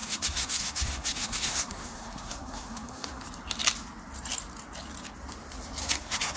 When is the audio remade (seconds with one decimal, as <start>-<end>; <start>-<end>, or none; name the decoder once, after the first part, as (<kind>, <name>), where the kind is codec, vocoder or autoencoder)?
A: 0.0-3.2 (codec, SNAC); 5.8-6.4